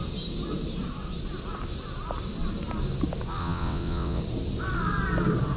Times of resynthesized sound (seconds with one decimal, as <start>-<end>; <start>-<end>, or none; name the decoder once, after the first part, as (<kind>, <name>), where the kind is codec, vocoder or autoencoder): 3.4-4.2 (vocoder, WaveNeXt)